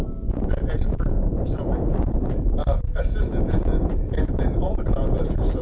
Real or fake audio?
fake